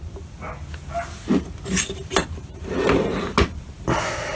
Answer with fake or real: real